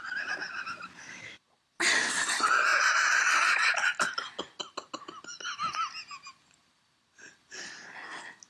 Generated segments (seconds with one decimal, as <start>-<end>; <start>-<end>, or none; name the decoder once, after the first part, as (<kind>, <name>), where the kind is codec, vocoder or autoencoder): none